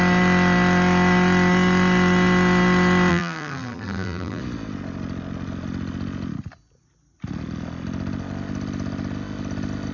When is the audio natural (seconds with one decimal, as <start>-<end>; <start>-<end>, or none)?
0.0-3.1; 4.4-9.9